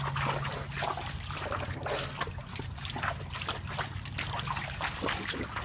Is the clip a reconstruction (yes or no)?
no